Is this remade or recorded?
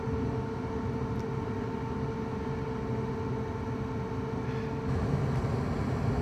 recorded